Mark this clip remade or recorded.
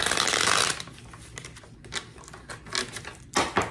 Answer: recorded